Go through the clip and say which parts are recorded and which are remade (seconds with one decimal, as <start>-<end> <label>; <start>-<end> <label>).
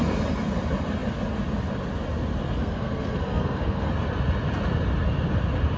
0.0-2.6 recorded; 2.6-3.9 remade; 3.9-5.8 recorded